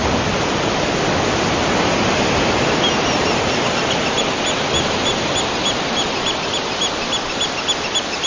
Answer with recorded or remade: recorded